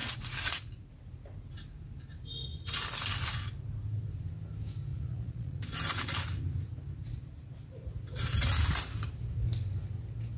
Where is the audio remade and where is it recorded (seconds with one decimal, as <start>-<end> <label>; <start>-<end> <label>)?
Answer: 0.0-0.9 remade; 0.9-4.9 recorded; 4.9-5.6 remade; 5.6-10.4 recorded